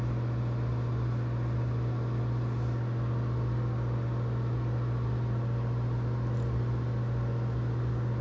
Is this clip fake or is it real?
real